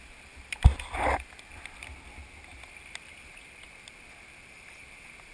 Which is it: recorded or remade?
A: recorded